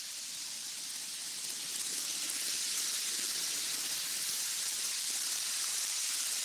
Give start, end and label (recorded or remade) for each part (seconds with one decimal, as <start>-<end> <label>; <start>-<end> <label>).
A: 0.0-0.7 remade; 0.7-2.6 recorded; 2.6-6.4 remade